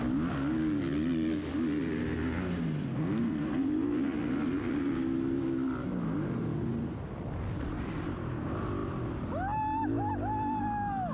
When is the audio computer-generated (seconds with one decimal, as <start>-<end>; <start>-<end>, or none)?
2.9-3.5